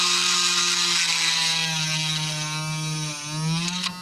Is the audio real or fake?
real